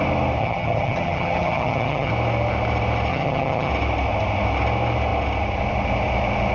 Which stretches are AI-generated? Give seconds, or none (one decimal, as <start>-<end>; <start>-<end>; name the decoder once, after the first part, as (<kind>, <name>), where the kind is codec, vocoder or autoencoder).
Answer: 0.4-2.1 (vocoder, HiFi-GAN); 3.1-3.7